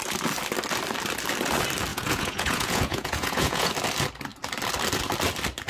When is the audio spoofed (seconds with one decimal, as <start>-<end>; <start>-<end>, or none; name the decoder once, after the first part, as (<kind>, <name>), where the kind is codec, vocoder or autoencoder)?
1.9-3.7 (vocoder, Vocos)